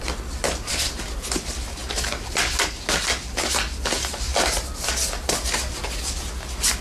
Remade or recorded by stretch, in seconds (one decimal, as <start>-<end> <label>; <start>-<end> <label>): 0.0-6.8 recorded